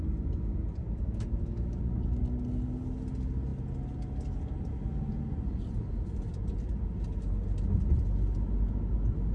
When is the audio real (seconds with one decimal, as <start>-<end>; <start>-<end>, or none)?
0.0-0.8; 1.8-9.3